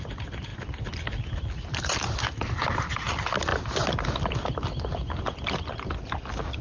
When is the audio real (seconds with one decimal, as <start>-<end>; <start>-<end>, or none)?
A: 0.0-6.6